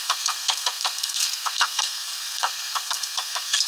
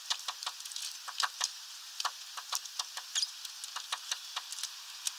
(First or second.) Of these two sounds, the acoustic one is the second